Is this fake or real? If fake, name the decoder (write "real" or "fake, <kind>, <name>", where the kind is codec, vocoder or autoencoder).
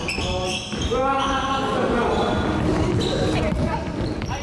real